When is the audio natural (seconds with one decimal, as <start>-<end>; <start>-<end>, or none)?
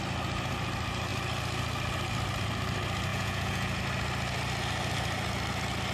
0.0-3.1; 3.8-5.9